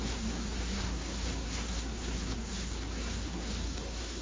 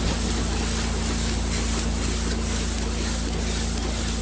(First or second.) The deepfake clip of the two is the first